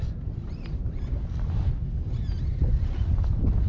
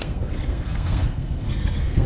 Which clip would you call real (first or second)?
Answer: first